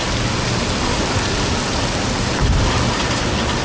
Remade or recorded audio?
recorded